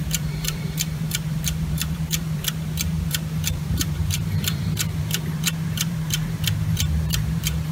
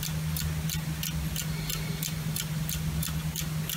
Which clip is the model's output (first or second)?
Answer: first